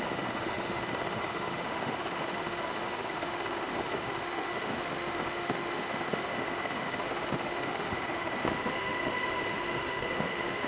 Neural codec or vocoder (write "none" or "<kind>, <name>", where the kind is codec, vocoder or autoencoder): autoencoder, DAC-VAE